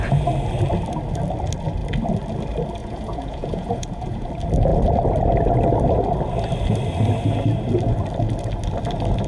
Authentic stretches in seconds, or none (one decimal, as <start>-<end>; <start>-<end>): 0.0-2.8; 4.3-9.3